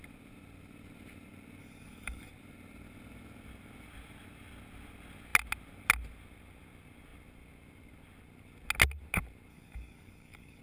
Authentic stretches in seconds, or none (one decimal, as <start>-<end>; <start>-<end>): 0.0-1.6; 2.3-9.5